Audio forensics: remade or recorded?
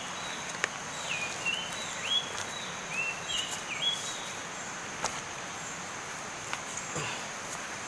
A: recorded